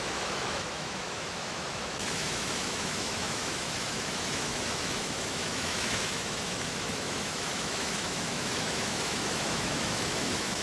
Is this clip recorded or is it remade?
remade